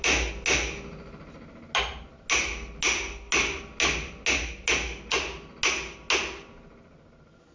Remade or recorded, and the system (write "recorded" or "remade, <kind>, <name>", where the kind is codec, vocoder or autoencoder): recorded